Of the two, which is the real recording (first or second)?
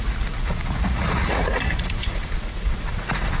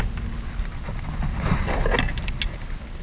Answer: second